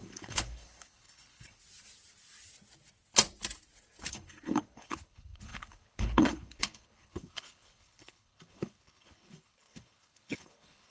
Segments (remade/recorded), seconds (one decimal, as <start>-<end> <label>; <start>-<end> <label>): 0.0-1.6 remade; 1.6-4.1 recorded; 4.1-10.9 remade